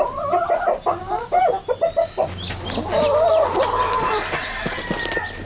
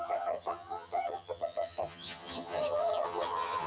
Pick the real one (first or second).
first